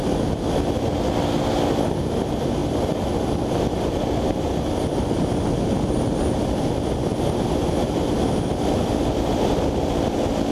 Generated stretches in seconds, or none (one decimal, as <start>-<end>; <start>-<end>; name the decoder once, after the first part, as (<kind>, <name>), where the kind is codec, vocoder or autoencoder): none